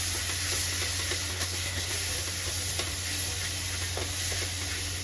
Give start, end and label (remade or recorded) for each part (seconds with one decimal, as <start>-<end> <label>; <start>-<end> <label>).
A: 0.0-1.3 recorded; 1.3-1.9 remade; 1.9-5.0 recorded